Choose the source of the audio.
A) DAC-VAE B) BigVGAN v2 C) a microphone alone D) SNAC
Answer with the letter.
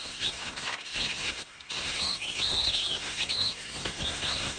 D